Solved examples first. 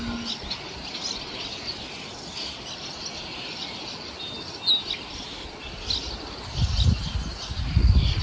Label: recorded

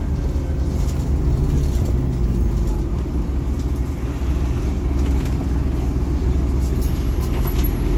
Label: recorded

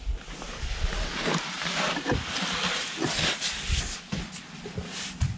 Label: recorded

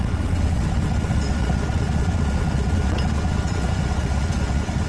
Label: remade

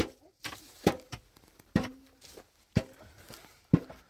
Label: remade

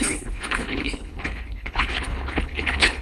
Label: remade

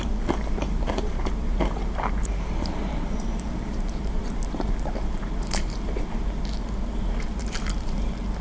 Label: remade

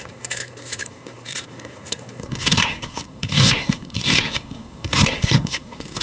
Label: remade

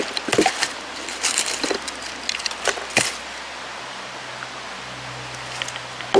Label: recorded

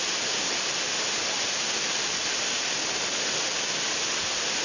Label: recorded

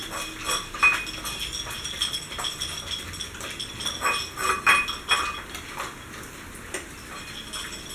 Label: recorded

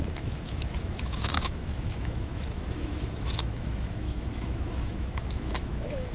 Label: remade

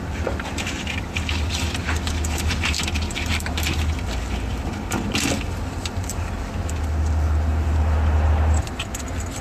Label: remade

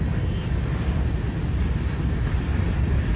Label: recorded